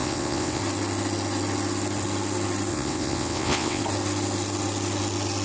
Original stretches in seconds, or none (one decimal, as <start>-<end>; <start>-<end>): 0.6-2.7; 3.8-5.4